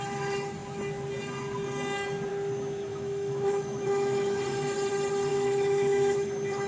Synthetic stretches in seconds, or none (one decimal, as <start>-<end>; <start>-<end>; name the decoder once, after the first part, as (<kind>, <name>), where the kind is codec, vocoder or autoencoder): 2.9-4.4 (autoencoder, DAC-VAE); 5.3-6.7